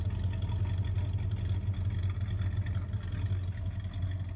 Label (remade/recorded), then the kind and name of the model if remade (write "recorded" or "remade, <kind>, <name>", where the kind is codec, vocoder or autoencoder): recorded